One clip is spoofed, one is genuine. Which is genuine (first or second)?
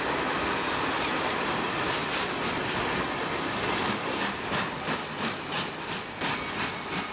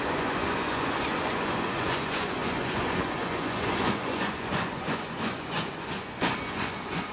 first